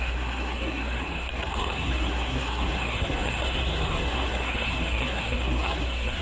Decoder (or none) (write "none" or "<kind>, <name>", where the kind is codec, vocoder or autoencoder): codec, SNAC